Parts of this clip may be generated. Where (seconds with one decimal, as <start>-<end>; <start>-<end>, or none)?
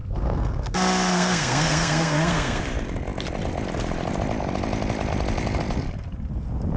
0.0-2.6